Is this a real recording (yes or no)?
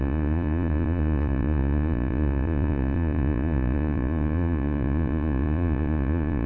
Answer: no